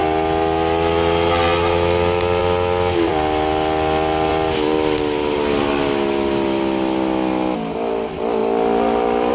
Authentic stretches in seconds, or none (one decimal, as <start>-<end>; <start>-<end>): 0.0-9.3

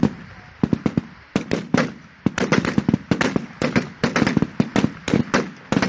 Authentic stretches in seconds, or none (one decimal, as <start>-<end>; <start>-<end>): 0.0-5.9